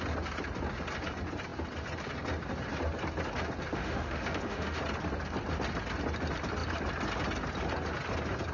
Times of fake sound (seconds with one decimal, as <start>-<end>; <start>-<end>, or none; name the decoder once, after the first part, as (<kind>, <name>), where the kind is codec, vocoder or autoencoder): 3.7-4.8 (autoencoder, DAC-VAE)